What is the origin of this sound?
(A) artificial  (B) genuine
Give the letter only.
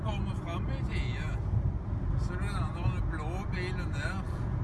B